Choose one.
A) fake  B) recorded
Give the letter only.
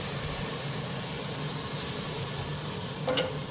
B